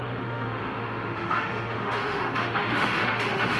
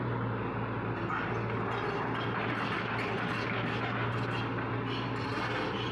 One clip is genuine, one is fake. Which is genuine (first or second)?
second